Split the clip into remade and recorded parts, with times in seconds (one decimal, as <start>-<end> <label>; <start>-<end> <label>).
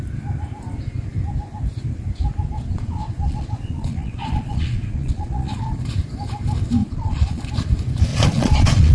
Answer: 0.0-2.7 recorded; 2.7-5.8 remade; 5.8-6.8 recorded; 6.8-7.4 remade; 7.4-8.1 recorded; 8.1-8.9 remade